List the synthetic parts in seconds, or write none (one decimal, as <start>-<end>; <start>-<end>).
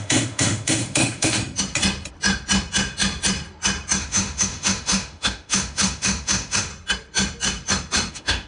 0.0-1.4; 4.0-6.7; 8.1-8.5